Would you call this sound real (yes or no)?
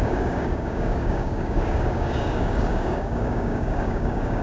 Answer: no